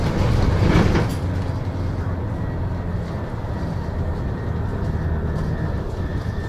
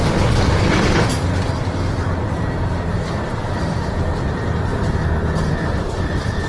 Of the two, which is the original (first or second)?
first